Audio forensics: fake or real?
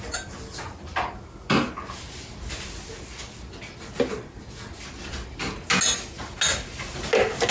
real